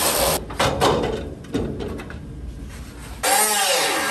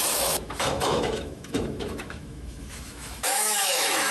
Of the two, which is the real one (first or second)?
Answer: first